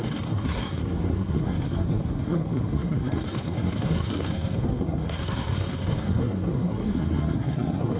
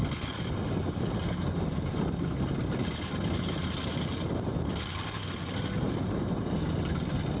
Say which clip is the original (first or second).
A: second